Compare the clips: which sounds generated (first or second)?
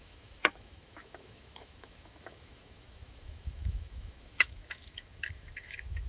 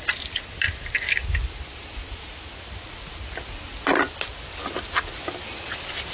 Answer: first